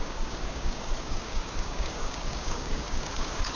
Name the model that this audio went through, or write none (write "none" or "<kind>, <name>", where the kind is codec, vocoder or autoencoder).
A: codec, DAC